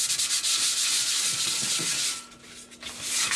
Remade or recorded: recorded